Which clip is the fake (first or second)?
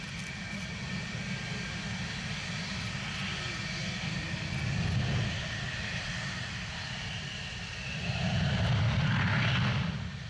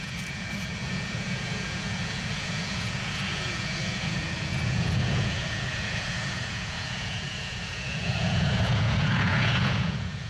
second